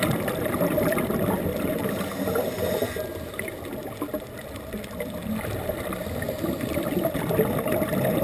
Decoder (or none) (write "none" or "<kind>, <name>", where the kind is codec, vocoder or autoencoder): none